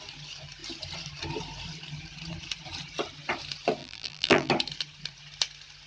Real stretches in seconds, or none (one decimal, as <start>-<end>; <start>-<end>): 0.0-3.8; 4.5-5.9